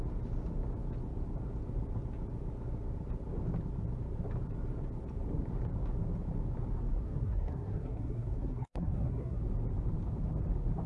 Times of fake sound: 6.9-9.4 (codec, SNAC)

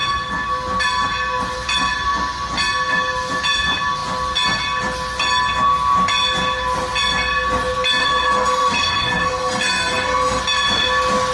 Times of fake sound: 8.0-10.4 (codec, SNAC)

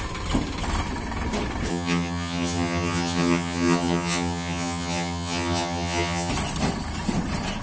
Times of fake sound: 1.7-6.3 (vocoder, HiFi-GAN)

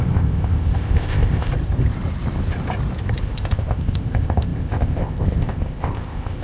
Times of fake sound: 0.0-1.5 (codec, ZipCodec); 3.2-6.4

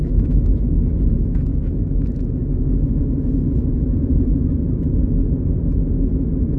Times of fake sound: 0.0-3.7 (autoencoder, DAC-VAE)

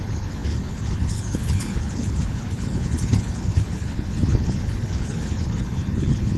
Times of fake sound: 0.0-6.4 (codec, HILCodec)